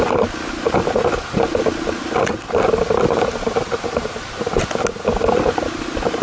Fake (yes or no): no